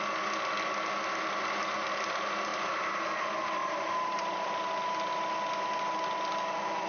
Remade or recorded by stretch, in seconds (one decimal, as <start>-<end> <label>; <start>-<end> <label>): 0.0-2.5 recorded; 2.5-3.0 remade; 3.0-3.6 recorded; 3.6-4.6 remade; 4.6-6.9 recorded